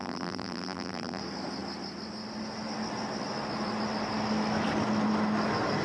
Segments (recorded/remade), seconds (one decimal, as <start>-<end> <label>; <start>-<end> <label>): 0.0-1.2 remade; 1.2-5.8 recorded